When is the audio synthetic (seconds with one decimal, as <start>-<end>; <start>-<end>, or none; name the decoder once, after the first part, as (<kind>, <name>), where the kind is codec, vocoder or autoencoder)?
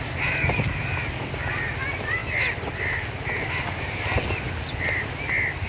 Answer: none